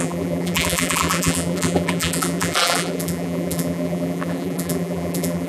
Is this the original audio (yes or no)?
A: no